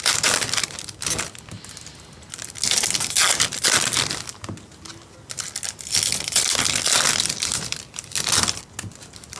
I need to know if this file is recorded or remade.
recorded